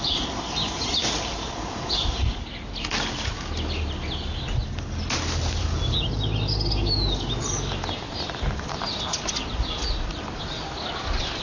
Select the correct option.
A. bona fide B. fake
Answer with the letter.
A